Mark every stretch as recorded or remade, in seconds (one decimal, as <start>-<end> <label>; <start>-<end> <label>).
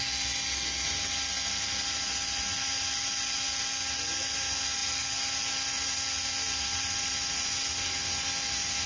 0.0-8.9 recorded